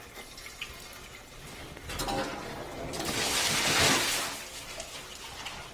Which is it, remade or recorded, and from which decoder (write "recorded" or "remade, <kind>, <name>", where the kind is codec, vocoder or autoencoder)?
recorded